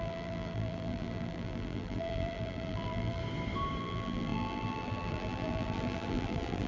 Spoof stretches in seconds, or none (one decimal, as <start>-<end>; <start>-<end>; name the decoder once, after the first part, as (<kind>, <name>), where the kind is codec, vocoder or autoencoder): 0.0-3.2 (vocoder, BigVGAN v2); 3.8-6.7